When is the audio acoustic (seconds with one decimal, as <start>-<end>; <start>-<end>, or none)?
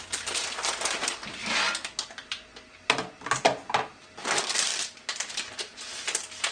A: 0.0-6.5